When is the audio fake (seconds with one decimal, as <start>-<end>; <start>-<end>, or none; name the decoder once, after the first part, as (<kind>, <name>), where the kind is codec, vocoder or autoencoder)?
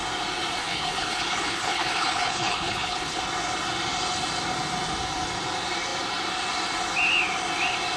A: 0.6-3.2 (codec, HILCodec)